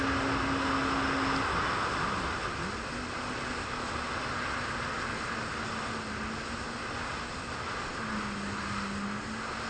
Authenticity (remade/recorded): recorded